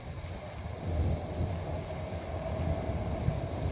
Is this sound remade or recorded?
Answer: recorded